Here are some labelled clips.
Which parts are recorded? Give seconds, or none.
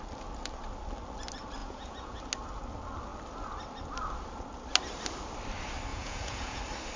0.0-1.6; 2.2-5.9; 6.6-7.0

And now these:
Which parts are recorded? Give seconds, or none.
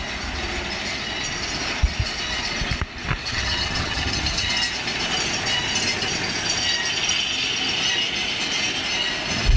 0.0-3.2; 4.5-9.6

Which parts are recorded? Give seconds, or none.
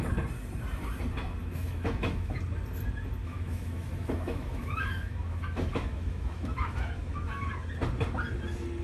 0.0-1.4; 2.4-3.2; 7.4-8.8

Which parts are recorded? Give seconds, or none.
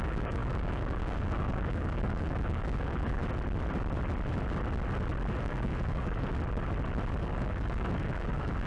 3.2-5.4; 6.3-7.2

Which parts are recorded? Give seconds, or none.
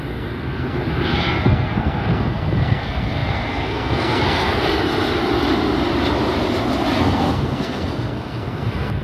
4.7-7.0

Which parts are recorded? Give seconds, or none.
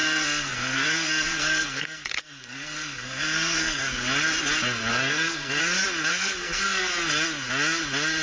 3.8-4.9; 5.6-6.1; 6.9-8.2